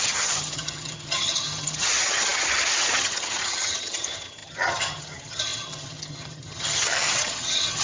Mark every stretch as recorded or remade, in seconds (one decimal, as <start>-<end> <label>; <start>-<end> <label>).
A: 0.0-7.8 remade